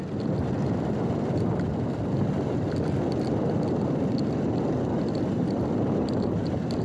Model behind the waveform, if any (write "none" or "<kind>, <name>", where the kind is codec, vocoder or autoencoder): none